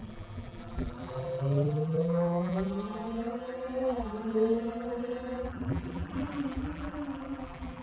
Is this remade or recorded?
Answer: remade